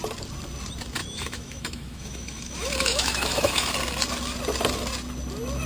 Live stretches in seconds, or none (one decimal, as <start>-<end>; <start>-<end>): 0.0-1.0; 3.7-5.7